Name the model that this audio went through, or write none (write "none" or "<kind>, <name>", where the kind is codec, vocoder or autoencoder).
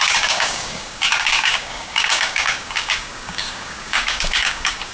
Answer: codec, DAC